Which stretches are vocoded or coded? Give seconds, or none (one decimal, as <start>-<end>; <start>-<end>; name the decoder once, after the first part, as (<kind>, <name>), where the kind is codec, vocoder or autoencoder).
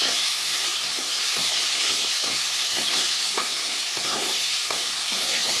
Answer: 0.0-5.6 (codec, SNAC)